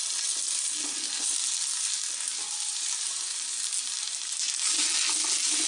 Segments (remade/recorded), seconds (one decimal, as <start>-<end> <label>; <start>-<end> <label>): 0.0-2.3 recorded; 2.3-2.9 remade; 2.9-5.7 recorded